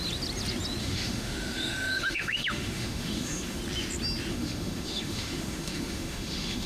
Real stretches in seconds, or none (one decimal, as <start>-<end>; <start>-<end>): 0.0-0.8; 3.6-4.3

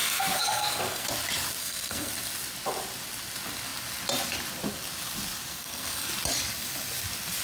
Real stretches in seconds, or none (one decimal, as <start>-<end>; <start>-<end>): 1.1-1.6; 2.1-5.5; 6.1-7.4

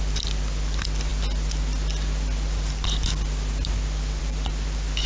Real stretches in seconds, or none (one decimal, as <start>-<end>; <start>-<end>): 0.0-5.1

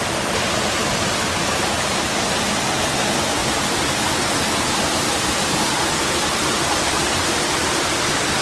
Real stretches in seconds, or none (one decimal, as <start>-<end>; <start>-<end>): 0.0-0.8; 1.6-3.4; 8.0-8.4

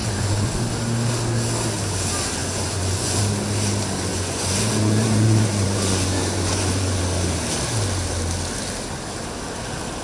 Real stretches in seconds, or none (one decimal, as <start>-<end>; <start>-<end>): 0.6-2.4; 3.2-4.1; 7.0-10.0

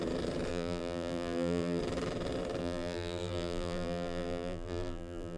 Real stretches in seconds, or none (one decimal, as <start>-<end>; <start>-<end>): 0.0-0.5; 1.8-2.6